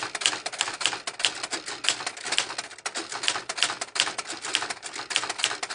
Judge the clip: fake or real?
real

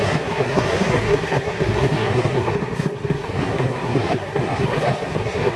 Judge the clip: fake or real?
fake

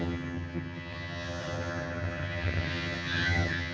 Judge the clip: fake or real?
fake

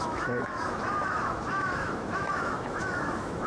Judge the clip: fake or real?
fake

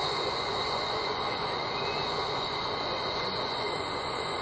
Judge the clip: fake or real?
fake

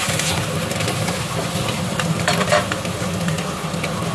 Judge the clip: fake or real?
real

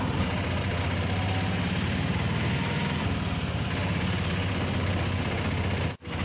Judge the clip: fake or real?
real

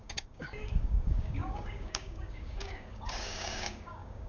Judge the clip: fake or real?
fake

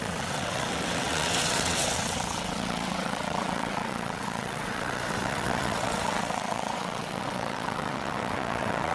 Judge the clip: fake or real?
fake